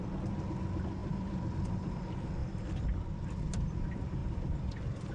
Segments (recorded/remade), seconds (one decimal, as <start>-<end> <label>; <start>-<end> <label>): 0.0-1.0 recorded; 1.0-2.0 remade; 2.0-2.4 recorded; 2.4-3.3 remade; 3.3-4.2 recorded; 4.2-5.1 remade